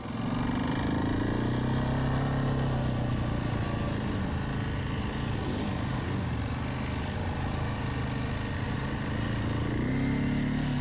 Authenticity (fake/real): real